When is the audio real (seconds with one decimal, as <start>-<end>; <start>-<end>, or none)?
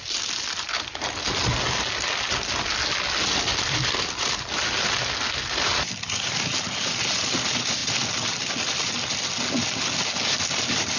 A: 0.0-3.5; 4.3-7.8; 8.5-11.0